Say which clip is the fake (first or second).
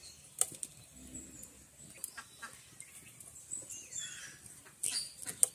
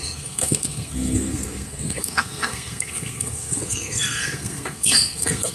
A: second